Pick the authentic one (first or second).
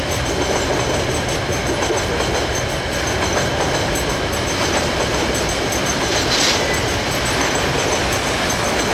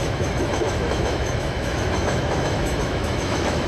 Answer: first